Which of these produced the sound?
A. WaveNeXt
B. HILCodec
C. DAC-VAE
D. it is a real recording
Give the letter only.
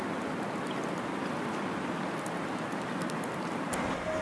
D